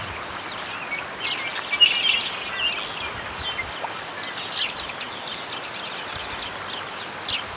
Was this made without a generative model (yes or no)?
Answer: yes